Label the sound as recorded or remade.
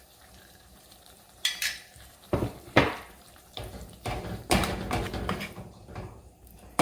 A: remade